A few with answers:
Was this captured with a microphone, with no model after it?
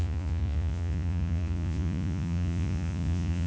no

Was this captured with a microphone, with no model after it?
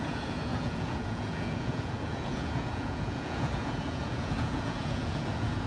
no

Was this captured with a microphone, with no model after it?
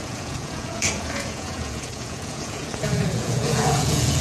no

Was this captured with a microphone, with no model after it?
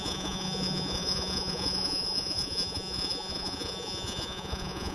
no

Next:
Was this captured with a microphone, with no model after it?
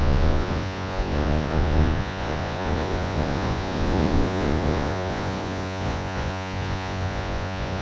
no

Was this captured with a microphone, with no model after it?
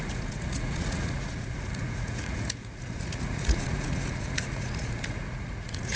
no